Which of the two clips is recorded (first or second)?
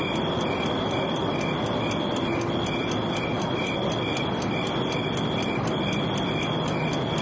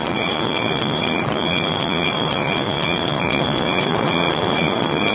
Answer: first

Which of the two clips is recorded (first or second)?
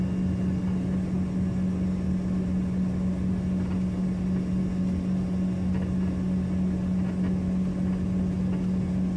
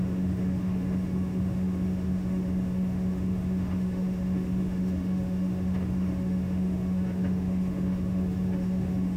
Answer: first